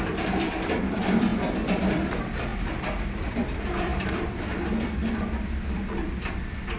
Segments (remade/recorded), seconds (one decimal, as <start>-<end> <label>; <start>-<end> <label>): 0.0-6.8 remade